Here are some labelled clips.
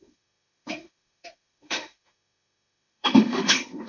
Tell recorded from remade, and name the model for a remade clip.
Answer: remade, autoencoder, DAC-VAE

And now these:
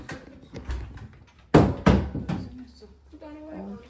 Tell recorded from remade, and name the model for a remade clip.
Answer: recorded